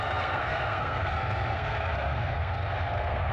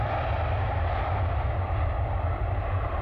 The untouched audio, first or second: second